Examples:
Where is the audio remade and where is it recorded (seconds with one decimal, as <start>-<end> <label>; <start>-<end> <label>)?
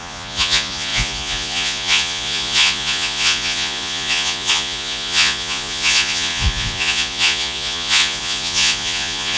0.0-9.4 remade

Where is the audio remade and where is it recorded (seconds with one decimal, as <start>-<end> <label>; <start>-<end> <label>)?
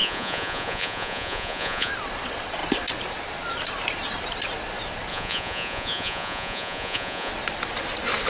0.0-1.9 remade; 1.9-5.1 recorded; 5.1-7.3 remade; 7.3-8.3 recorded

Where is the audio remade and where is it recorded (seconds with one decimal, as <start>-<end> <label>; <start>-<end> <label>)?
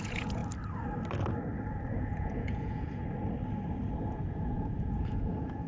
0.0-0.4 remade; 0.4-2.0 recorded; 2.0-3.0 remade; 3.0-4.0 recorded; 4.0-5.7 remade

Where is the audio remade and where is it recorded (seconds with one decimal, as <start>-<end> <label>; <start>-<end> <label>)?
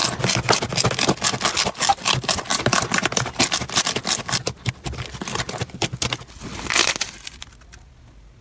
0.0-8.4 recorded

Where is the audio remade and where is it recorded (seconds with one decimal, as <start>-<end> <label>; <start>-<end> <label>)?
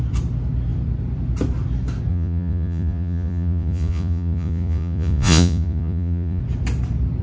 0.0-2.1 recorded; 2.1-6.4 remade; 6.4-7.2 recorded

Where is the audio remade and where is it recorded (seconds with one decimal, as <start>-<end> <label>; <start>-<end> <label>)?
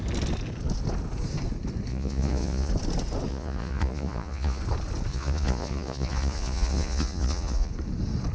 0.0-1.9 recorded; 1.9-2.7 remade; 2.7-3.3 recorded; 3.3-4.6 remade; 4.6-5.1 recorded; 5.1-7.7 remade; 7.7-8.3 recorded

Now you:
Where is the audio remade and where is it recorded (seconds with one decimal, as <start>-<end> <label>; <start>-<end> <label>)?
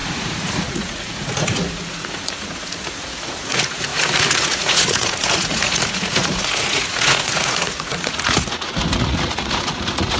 0.0-10.2 remade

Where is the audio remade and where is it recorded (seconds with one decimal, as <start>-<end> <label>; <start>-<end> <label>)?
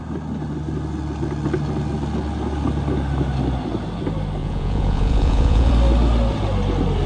0.0-4.4 recorded; 4.4-5.7 remade; 5.7-7.1 recorded